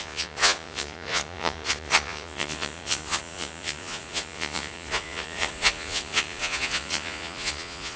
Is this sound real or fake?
fake